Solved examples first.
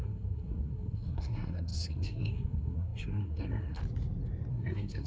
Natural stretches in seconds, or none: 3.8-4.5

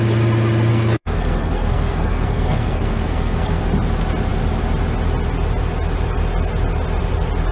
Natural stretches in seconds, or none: 0.0-0.7; 3.6-7.5

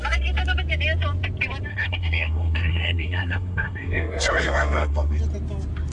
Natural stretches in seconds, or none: 0.0-1.7; 5.2-5.9